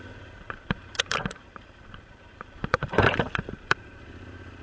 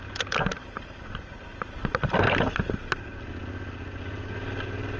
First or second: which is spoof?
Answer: first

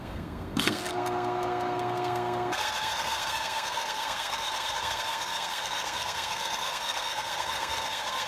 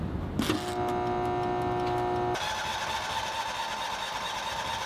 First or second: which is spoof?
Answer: first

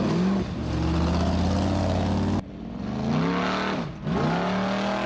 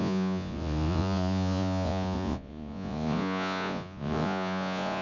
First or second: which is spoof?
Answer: second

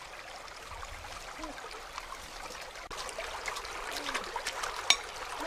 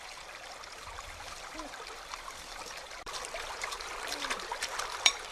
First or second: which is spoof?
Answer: second